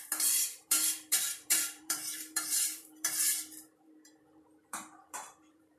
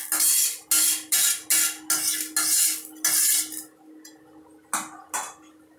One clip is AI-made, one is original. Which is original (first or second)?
second